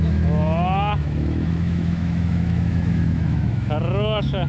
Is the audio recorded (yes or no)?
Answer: no